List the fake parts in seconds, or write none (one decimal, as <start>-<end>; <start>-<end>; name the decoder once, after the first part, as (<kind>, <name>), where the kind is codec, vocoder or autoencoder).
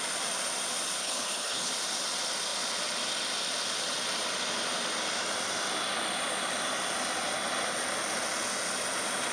1.0-1.7 (codec, HILCodec)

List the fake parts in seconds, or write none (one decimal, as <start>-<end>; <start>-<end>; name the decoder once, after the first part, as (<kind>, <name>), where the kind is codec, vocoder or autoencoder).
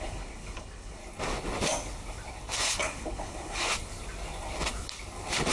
0.0-1.0 (codec, HILCodec); 2.6-3.7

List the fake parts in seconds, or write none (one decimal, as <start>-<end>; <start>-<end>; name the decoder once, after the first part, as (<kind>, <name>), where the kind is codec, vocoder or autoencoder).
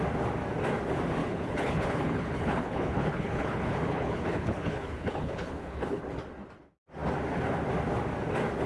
1.2-6.0 (codec, HILCodec)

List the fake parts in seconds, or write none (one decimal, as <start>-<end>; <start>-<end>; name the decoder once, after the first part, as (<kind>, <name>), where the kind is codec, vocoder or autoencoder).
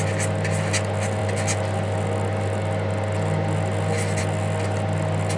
none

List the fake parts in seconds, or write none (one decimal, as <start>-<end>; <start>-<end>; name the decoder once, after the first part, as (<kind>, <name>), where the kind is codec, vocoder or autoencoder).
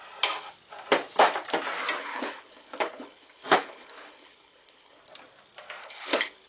2.0-5.0 (codec, HILCodec); 5.8-6.5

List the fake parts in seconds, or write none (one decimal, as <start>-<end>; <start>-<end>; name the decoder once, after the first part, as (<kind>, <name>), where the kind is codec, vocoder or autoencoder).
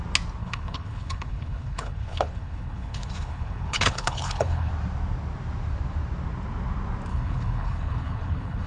0.4-4.7 (codec, HILCodec); 7.1-8.7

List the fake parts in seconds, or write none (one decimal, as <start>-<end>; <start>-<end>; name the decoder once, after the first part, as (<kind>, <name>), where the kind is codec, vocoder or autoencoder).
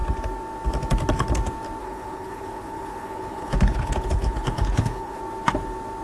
1.8-5.2 (codec, HILCodec)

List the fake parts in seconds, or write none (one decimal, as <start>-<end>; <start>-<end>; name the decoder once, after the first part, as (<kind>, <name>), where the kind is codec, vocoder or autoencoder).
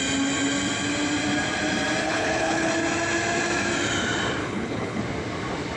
2.0-2.7 (codec, HILCodec); 4.4-5.0